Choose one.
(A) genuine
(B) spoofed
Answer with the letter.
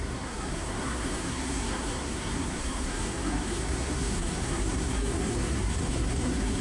B